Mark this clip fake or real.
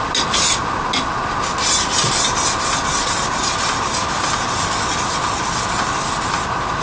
real